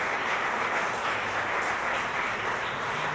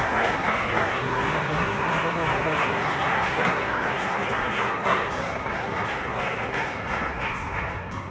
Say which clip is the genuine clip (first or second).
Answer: first